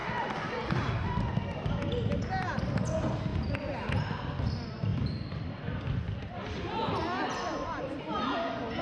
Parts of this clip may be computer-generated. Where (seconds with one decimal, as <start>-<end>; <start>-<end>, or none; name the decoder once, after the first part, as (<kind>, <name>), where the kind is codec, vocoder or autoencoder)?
0.0-1.2 (vocoder, BigVGAN v2); 3.3-4.0; 4.9-8.0